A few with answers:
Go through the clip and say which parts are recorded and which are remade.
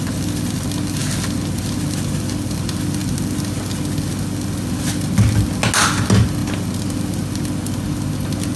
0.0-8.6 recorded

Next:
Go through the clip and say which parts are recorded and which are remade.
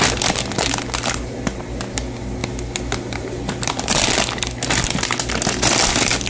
0.0-2.4 recorded; 2.4-3.7 remade; 3.7-6.3 recorded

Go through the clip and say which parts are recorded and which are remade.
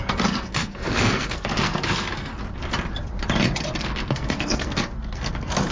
0.0-2.3 remade; 2.3-3.8 recorded; 3.8-5.7 remade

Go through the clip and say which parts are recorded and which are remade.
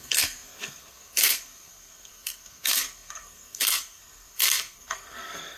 0.0-5.6 remade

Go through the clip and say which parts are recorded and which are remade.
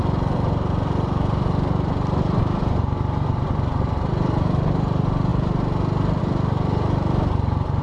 0.0-5.3 remade; 5.3-6.2 recorded; 6.2-7.8 remade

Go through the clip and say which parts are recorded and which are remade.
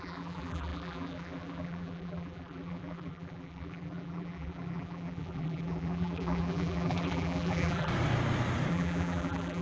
0.0-7.9 remade; 7.9-8.7 recorded; 8.7-9.6 remade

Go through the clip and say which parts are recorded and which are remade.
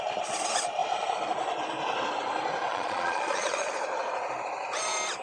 0.0-2.7 recorded; 2.7-3.7 remade; 3.7-5.2 recorded